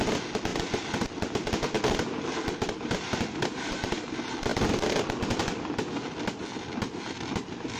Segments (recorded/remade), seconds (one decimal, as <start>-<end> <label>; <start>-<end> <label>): 0.0-7.8 recorded